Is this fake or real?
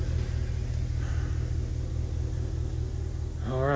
real